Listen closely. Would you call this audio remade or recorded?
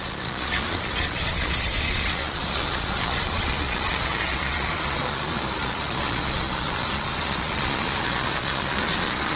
remade